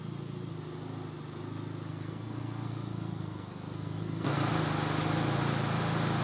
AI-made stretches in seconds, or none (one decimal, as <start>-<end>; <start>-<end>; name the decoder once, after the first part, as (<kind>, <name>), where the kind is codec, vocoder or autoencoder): 1.9-4.5 (codec, SNAC)